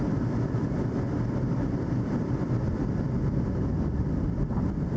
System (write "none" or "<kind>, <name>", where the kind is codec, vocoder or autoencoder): vocoder, BigVGAN v2